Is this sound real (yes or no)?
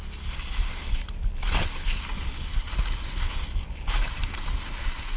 yes